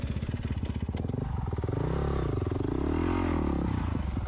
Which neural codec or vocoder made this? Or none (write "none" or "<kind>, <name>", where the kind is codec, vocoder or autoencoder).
none